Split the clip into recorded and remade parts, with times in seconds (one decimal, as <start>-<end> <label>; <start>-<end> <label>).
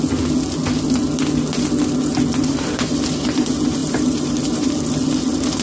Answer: 0.0-2.5 recorded; 2.5-3.4 remade; 3.4-3.8 recorded; 3.8-4.8 remade; 4.8-5.6 recorded